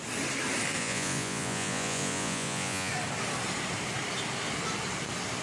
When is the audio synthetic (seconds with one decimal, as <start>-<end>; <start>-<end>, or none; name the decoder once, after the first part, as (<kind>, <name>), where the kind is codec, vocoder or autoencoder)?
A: 0.8-2.9 (vocoder, Vocos)